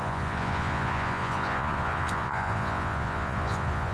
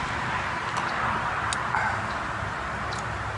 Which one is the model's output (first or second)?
first